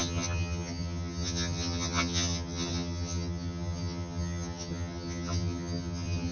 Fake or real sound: fake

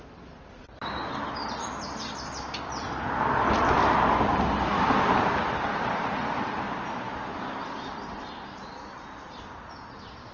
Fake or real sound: real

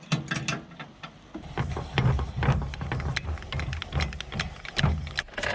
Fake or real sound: real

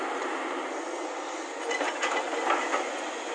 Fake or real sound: real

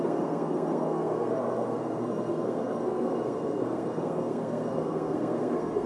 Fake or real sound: fake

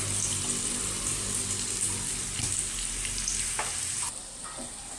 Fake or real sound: real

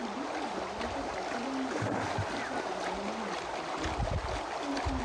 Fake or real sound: real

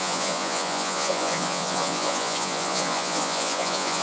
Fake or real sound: fake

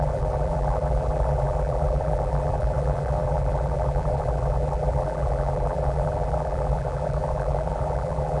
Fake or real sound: fake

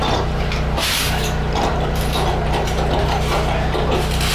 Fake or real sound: fake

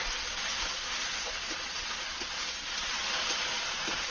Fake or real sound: fake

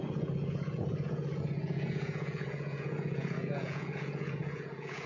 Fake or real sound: fake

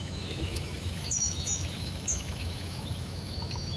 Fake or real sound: fake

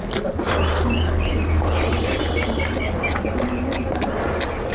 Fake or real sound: real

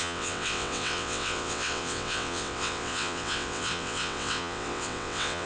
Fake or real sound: fake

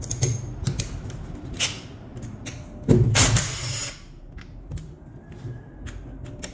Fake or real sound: real